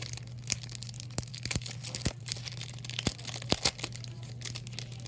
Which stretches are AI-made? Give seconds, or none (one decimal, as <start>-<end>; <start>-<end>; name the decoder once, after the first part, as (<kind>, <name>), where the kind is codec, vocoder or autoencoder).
none